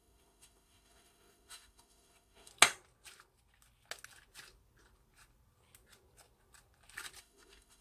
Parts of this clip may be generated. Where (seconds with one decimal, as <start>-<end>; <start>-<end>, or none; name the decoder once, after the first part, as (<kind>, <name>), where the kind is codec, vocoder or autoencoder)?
0.0-2.5 (autoencoder, DAC-VAE); 7.2-7.8